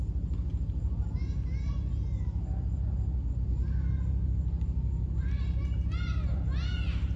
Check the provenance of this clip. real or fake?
real